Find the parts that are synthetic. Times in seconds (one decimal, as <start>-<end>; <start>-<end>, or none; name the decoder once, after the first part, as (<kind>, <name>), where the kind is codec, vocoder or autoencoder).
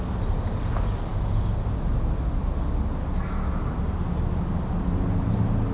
none